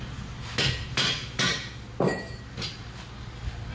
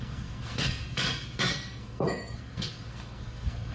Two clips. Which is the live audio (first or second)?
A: first